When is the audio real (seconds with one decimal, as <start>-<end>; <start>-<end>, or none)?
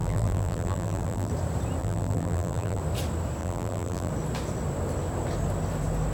1.3-1.8; 2.8-3.4; 4.1-6.1